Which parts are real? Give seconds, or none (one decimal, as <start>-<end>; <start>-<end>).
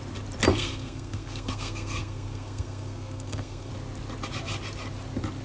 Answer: 0.0-0.5; 3.7-5.4